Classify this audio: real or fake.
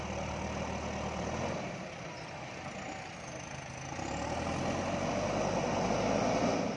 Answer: real